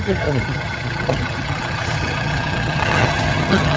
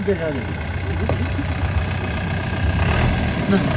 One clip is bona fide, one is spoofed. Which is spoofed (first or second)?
first